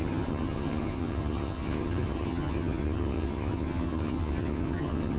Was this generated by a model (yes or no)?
yes